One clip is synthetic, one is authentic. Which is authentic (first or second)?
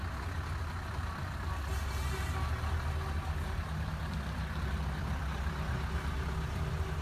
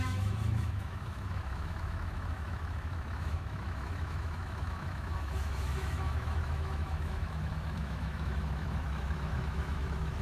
first